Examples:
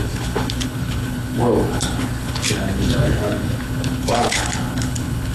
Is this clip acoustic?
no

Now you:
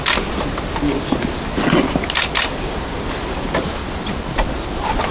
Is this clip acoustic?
yes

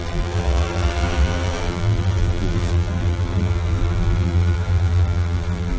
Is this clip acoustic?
no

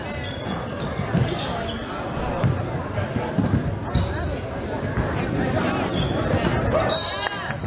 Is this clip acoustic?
yes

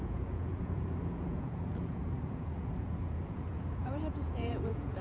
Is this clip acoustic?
no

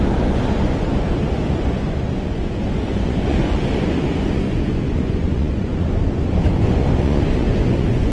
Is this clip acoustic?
no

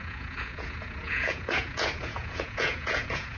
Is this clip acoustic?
no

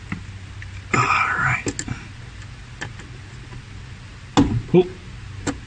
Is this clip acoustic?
yes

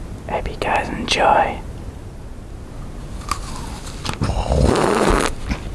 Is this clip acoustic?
yes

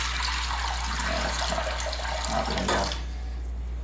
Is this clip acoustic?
yes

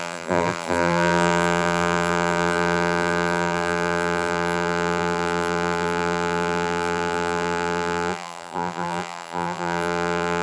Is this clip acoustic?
no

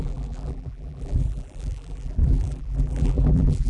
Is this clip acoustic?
no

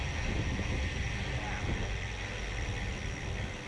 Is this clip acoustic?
yes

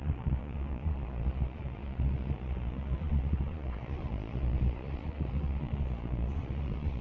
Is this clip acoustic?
no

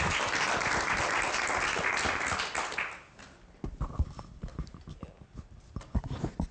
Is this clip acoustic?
yes